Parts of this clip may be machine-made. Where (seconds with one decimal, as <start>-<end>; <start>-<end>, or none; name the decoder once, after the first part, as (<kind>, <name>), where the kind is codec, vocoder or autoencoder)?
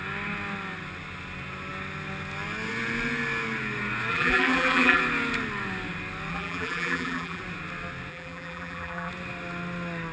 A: 4.1-5.0 (vocoder, BigVGAN v2); 6.3-7.4; 8.1-9.1